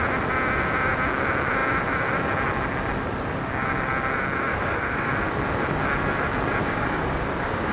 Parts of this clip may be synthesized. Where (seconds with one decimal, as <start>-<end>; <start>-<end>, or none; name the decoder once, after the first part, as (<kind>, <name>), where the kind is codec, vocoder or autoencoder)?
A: 4.5-5.1 (codec, DAC); 6.6-7.7